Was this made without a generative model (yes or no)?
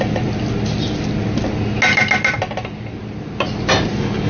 yes